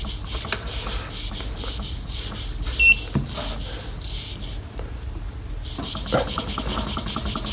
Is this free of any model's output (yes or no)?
yes